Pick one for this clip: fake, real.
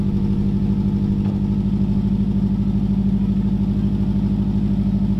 real